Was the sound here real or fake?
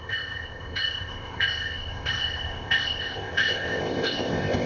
fake